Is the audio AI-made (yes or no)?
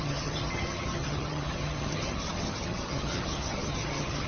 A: yes